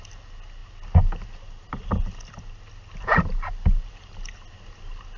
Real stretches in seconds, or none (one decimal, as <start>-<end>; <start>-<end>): 0.0-5.2